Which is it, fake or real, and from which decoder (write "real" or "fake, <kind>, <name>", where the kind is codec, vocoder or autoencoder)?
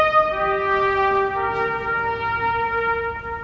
real